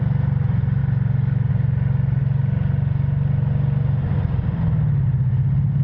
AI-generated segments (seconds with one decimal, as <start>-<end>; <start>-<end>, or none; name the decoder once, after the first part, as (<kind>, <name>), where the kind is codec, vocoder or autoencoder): none